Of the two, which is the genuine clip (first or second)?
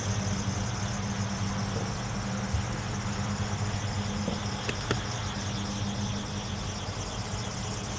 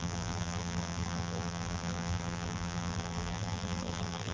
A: first